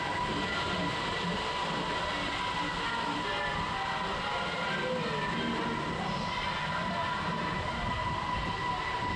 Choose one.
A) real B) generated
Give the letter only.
A